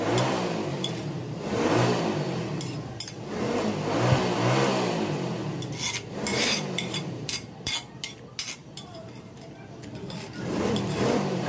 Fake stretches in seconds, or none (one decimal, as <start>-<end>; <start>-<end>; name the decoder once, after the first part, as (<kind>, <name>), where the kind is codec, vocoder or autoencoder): 0.7-2.0 (vocoder, BigVGAN v2); 6.3-7.7; 8.6-9.8